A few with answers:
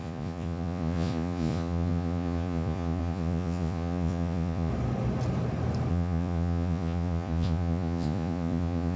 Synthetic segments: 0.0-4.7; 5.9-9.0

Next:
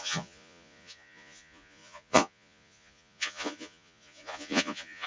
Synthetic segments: 0.0-5.1